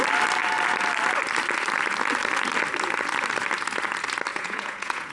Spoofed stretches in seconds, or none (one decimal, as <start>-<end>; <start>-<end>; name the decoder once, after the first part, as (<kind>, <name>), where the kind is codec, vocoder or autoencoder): 4.3-5.1 (vocoder, Vocos)